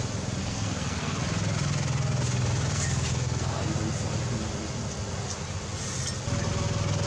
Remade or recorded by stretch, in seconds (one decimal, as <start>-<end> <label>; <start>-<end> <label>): 0.0-0.4 recorded; 0.4-1.2 remade; 1.2-2.7 recorded; 2.7-3.6 remade; 3.6-7.1 recorded